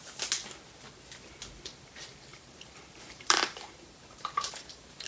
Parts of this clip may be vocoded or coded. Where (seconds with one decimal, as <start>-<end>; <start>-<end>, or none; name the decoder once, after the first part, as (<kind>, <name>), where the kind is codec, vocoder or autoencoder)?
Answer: 2.3-5.1 (vocoder, BigVGAN v2)